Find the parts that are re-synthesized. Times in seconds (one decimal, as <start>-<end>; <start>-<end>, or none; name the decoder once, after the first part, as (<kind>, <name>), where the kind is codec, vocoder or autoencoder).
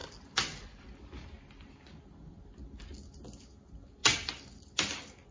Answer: none